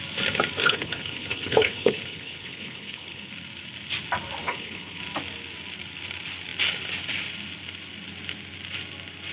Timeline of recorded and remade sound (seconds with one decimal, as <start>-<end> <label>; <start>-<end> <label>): 0.0-0.6 recorded; 0.6-3.3 remade; 3.3-4.4 recorded; 4.4-5.0 remade; 5.0-9.3 recorded

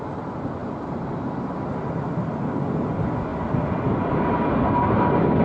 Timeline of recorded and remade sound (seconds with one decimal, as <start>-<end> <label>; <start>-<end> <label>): 0.0-5.4 recorded

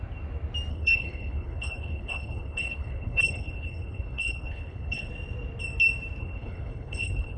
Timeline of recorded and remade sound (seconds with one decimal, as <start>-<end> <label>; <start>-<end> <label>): 0.0-0.7 recorded; 0.7-5.1 remade; 5.1-6.2 recorded; 6.2-7.4 remade

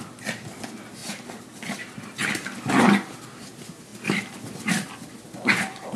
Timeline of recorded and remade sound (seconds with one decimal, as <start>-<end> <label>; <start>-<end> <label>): 0.0-6.0 recorded

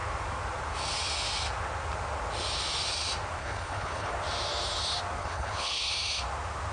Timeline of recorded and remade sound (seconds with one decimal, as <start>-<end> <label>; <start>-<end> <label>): 0.0-3.4 recorded; 3.4-4.1 remade; 4.1-5.2 recorded; 5.2-5.9 remade; 5.9-6.7 recorded